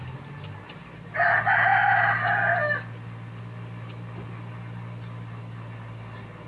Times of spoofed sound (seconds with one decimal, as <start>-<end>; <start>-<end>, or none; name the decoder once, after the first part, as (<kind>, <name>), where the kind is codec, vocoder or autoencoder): none